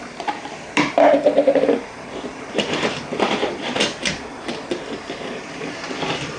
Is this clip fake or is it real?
fake